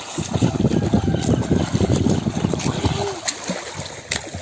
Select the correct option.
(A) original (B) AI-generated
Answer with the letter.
A